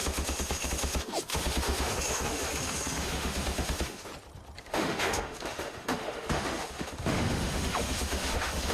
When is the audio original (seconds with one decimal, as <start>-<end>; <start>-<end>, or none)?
4.1-4.6